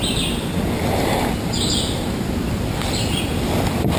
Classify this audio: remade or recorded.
recorded